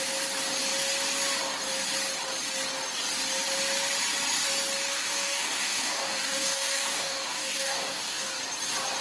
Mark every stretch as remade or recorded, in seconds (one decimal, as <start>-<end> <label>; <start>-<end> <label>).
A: 0.0-4.9 recorded; 4.9-8.4 remade; 8.4-9.0 recorded